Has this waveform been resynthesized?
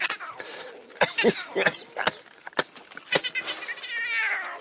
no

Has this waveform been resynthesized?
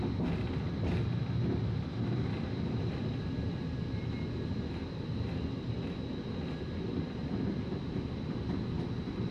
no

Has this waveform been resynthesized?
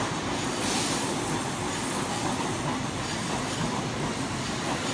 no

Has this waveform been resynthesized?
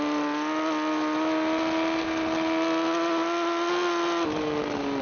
no